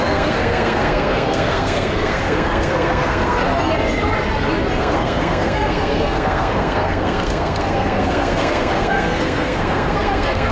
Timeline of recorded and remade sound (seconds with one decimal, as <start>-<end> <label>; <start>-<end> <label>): 0.0-3.4 remade; 3.4-4.8 recorded; 4.8-10.5 remade